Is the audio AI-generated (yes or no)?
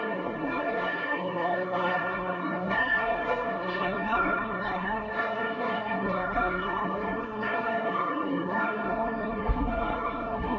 yes